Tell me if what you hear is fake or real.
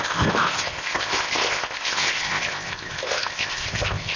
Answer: fake